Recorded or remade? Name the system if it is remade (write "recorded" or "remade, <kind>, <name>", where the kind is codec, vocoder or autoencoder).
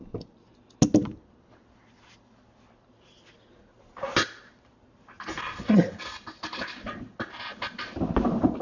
recorded